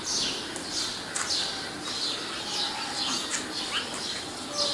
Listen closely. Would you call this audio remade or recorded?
recorded